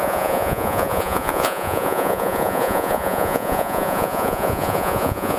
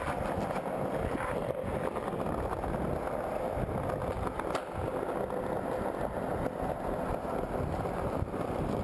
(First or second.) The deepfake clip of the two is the first